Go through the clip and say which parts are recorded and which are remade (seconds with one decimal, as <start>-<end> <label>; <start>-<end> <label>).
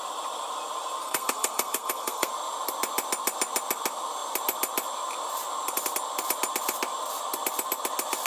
0.0-1.0 recorded; 1.0-2.3 remade; 2.3-8.3 recorded